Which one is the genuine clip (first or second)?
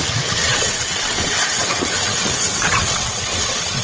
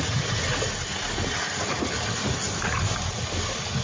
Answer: second